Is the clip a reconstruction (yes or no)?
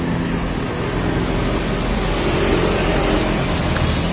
no